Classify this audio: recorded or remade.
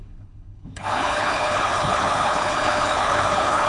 remade